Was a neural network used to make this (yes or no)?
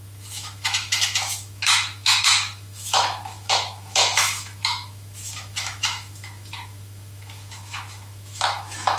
yes